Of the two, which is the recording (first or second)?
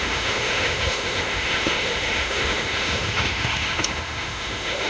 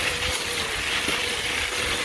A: second